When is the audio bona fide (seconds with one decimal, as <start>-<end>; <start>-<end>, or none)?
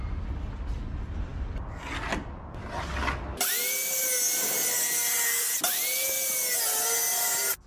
0.0-7.7